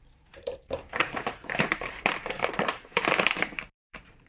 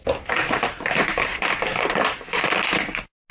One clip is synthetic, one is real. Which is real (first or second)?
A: second